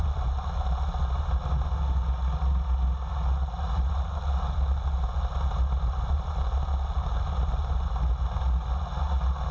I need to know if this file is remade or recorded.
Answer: recorded